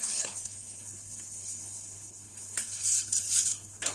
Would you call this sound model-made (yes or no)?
yes